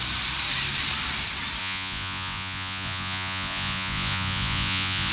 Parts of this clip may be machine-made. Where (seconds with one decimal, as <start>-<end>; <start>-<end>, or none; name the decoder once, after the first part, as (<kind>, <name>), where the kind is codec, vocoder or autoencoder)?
1.6-5.1 (vocoder, Vocos)